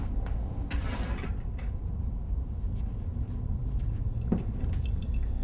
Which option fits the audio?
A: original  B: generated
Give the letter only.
A